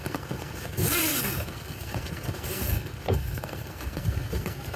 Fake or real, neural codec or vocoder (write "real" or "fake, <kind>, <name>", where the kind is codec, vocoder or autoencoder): fake, codec, SNAC